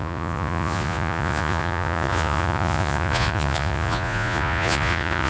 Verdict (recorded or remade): remade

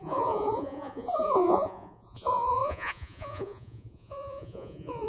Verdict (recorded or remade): remade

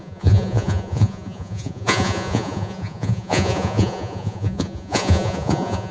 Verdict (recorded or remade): remade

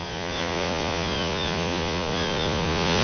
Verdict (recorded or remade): remade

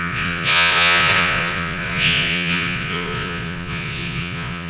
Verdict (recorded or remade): remade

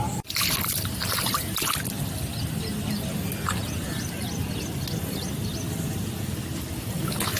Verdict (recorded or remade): recorded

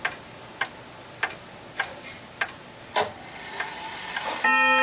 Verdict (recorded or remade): recorded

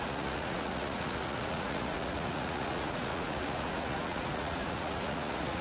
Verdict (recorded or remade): remade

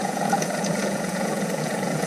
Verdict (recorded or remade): remade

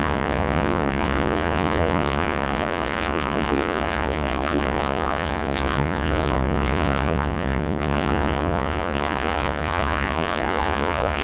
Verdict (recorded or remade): remade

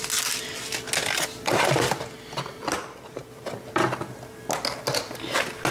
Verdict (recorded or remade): recorded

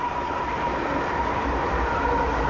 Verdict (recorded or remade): recorded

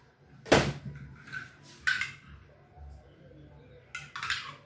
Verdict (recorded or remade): recorded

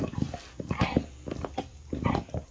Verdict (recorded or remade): recorded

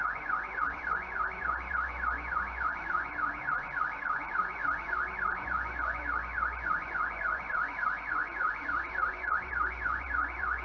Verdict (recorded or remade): remade